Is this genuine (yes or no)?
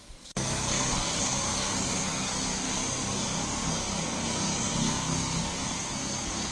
no